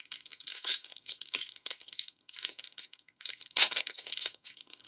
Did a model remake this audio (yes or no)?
yes